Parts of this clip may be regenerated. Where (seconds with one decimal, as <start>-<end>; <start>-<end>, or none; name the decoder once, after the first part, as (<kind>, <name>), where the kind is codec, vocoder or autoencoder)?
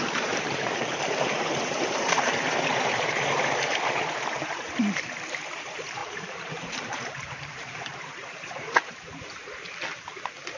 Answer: 0.0-4.8 (vocoder, BigVGAN v2); 6.0-9.6